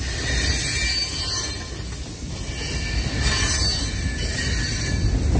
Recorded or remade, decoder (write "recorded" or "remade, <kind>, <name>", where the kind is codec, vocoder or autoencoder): recorded